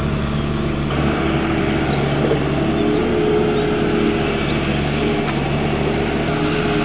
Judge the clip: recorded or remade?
recorded